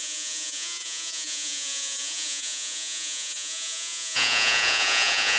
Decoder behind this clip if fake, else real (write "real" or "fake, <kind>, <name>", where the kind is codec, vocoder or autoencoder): fake, vocoder, Vocos